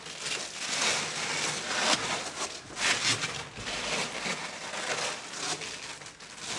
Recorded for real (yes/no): yes